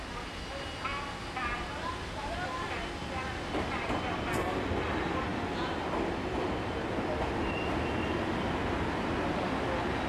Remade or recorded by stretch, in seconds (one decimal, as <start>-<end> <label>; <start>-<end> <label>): 0.0-0.9 recorded; 0.9-2.6 remade; 2.6-10.1 recorded